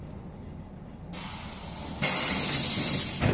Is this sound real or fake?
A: real